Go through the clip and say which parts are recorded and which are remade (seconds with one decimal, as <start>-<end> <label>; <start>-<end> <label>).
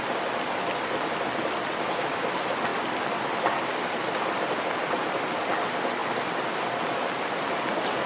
0.0-8.1 recorded